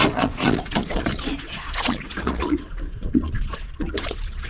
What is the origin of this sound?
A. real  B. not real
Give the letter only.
B